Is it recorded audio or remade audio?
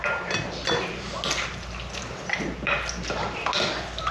recorded